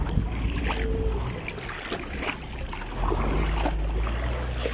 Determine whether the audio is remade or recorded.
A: recorded